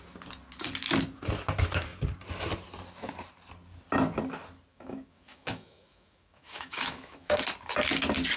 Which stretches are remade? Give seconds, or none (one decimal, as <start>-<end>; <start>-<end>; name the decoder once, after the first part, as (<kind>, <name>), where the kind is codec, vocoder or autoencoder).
4.7-7.4 (autoencoder, DAC-VAE)

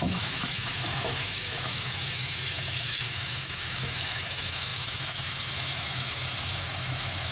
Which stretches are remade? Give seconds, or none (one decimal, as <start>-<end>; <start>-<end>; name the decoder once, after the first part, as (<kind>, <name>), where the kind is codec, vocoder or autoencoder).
0.0-7.3 (autoencoder, DAC-VAE)

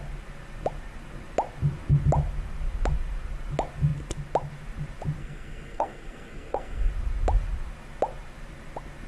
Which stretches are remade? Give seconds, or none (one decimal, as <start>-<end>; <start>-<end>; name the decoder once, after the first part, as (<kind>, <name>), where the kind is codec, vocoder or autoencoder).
5.2-6.9 (codec, SNAC)

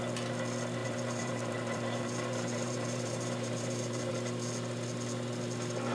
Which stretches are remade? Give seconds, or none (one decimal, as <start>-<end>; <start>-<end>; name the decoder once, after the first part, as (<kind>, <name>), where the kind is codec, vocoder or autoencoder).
0.8-4.1 (vocoder, BigVGAN v2)